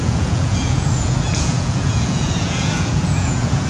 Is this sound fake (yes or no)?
yes